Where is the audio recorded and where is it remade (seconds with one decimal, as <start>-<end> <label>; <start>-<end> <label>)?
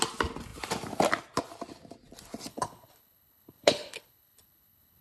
0.0-2.5 recorded; 2.5-5.0 remade